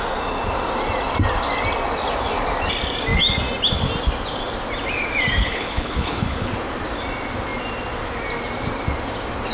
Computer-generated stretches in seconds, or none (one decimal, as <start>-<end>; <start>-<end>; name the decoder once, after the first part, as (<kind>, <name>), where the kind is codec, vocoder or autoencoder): 5.4-6.5 (codec, HILCodec)